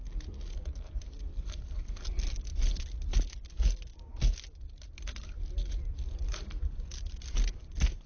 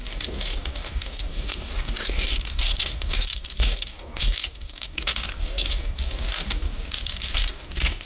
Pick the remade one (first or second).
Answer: second